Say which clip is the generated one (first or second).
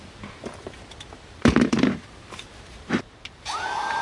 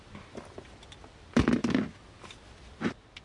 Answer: first